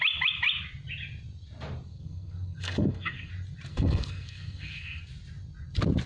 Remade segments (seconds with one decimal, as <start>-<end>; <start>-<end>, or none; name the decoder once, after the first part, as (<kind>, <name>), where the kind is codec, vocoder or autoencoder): 1.9-3.3 (codec, SNAC); 3.7-5.0